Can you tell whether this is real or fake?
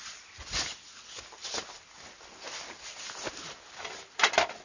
real